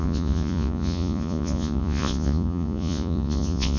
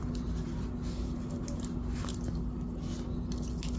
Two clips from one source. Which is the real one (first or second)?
second